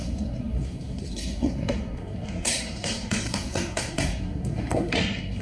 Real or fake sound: fake